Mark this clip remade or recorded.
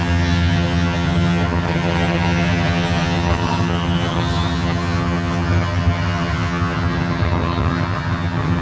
remade